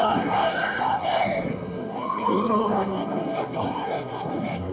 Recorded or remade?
remade